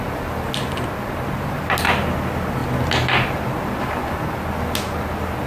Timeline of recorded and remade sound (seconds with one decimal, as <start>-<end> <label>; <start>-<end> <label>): 0.0-5.5 recorded